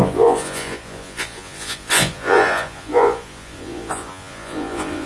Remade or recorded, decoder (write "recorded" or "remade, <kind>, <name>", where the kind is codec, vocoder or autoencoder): remade, vocoder, Vocos